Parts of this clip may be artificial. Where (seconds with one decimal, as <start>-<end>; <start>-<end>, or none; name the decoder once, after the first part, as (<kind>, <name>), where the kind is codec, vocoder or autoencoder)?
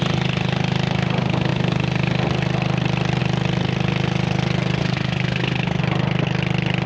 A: 4.8-5.8 (codec, SNAC)